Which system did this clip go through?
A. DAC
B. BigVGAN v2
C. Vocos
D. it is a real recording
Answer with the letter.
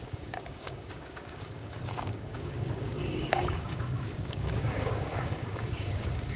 A